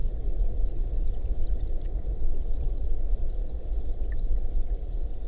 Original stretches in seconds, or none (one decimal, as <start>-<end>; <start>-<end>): 0.0-5.3